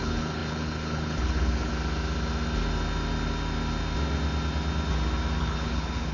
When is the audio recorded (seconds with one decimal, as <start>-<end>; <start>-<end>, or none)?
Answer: 1.7-5.4

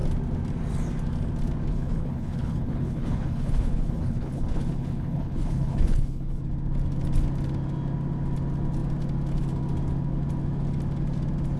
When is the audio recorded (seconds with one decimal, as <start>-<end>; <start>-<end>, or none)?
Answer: 0.0-1.7; 6.4-11.6

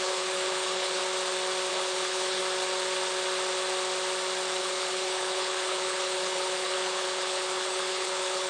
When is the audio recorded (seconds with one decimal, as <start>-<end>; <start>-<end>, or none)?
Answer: 1.0-1.7; 2.4-4.6

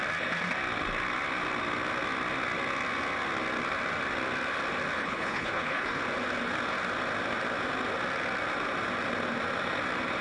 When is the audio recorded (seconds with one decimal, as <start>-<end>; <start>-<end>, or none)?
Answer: 0.0-5.0; 6.0-10.2

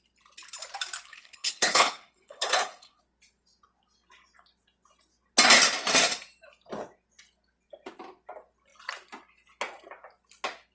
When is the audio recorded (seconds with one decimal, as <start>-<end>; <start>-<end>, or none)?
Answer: 0.0-1.1; 3.0-10.7

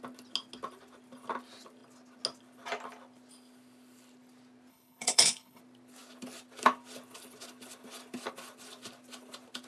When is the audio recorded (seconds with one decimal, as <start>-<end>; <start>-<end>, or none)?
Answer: 0.0-4.7; 5.6-9.7